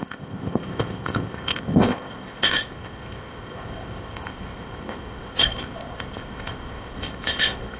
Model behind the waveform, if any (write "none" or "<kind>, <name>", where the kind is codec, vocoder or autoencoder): codec, ZipCodec